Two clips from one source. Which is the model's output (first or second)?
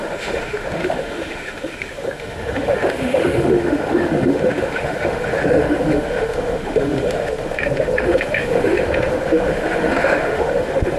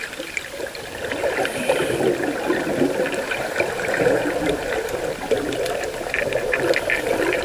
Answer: first